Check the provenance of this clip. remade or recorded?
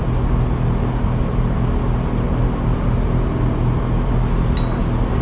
recorded